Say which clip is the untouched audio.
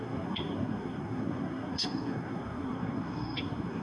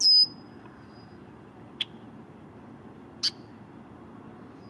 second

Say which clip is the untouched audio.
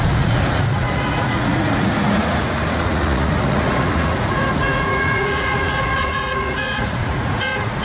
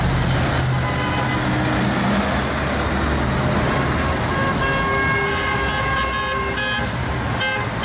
second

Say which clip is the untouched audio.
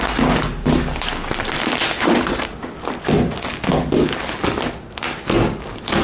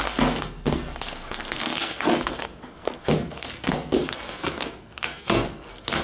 first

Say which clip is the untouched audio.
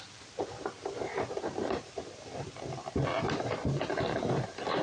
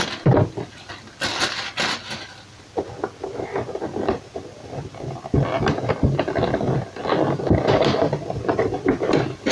second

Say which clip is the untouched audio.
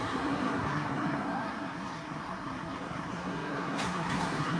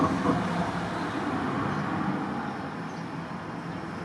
second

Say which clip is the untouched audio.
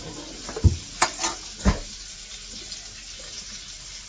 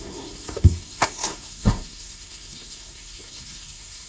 first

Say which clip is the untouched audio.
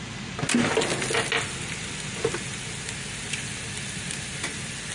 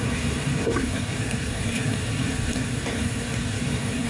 first